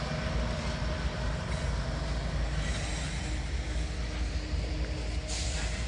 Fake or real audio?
real